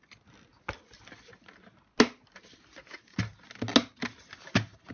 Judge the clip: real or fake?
real